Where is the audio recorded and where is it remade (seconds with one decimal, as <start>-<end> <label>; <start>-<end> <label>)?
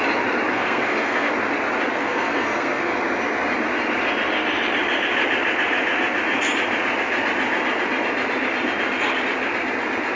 0.0-0.5 recorded; 0.5-1.3 remade; 1.3-1.9 recorded; 1.9-3.0 remade; 3.0-10.2 recorded